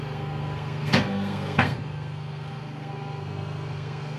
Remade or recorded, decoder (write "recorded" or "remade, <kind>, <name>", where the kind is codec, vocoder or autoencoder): remade, codec, SNAC